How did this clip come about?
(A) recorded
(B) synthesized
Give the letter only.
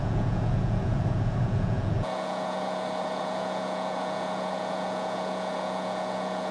B